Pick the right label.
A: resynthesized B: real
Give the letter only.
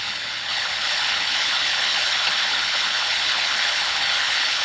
A